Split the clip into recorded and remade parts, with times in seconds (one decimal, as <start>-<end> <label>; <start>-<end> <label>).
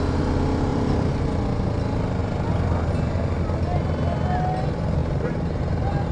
0.0-0.7 recorded; 0.7-1.2 remade; 1.2-5.0 recorded; 5.0-5.6 remade; 5.6-6.1 recorded